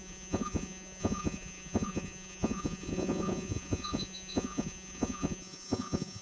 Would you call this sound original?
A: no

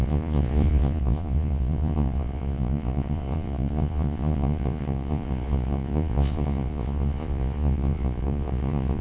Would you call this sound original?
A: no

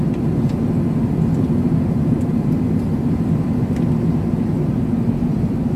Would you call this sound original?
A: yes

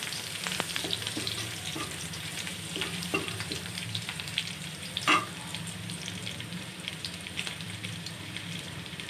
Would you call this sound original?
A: no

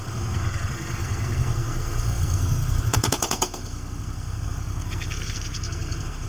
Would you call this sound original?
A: no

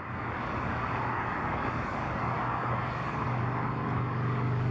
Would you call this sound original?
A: no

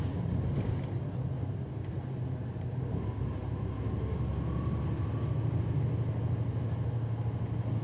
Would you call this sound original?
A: yes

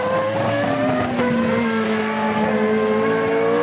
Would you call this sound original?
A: yes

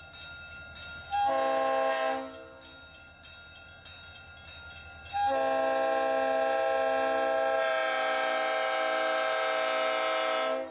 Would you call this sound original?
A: yes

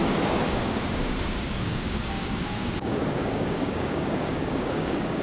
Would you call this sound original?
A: no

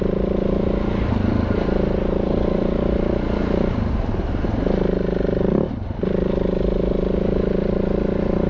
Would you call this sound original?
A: yes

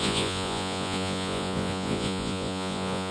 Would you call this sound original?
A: no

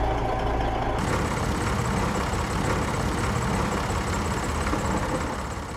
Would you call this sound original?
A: yes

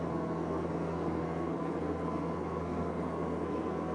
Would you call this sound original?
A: no